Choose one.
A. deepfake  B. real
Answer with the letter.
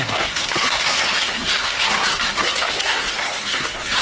A